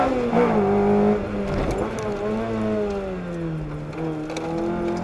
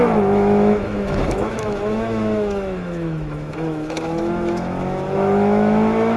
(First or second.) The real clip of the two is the first